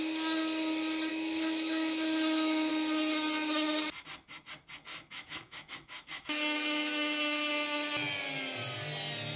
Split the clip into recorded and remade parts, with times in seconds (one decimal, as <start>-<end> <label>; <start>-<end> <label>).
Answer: 0.0-1.1 recorded; 1.1-2.7 remade; 2.7-4.9 recorded; 4.9-7.5 remade; 7.5-9.4 recorded